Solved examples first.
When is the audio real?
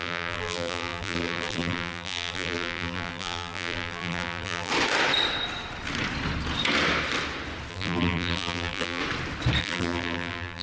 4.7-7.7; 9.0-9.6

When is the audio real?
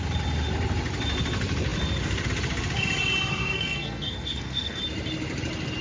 0.0-3.4; 4.8-5.8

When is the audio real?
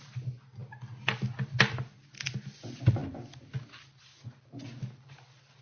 0.0-5.6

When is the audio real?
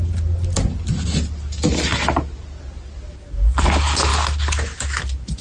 0.0-5.4